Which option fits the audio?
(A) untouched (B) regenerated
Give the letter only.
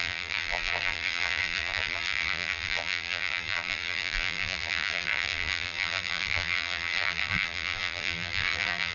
B